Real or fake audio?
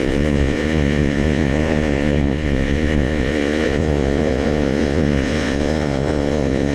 fake